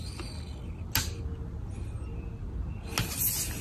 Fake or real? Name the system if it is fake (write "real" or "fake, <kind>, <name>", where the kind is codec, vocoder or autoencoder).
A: real